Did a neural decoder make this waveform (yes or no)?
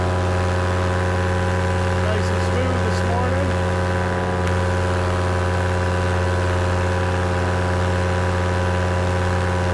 no